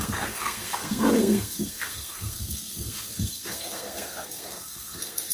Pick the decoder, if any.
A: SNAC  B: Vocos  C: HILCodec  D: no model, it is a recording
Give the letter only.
A